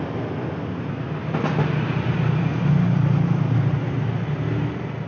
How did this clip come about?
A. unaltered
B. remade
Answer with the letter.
A